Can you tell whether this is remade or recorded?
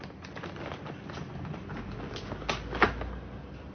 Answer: recorded